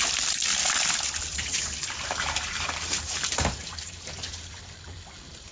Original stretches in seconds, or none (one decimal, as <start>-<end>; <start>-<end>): 0.0-1.3; 4.6-5.5